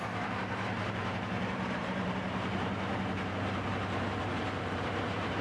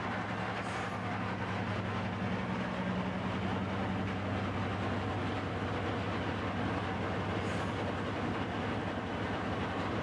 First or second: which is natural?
second